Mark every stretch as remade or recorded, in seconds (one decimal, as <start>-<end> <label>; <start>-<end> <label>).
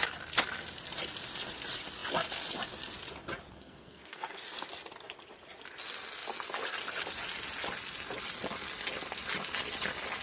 0.0-3.5 recorded; 3.5-4.4 remade; 4.4-10.2 recorded